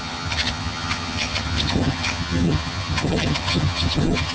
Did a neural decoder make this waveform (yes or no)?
yes